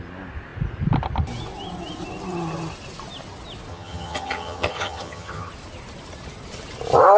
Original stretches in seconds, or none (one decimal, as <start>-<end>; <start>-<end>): 0.0-3.7; 5.5-7.2